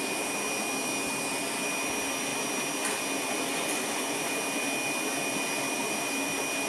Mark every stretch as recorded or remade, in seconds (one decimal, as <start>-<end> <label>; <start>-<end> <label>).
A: 0.0-3.5 recorded; 3.5-4.4 remade; 4.4-6.7 recorded